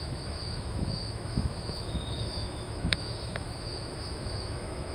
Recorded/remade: remade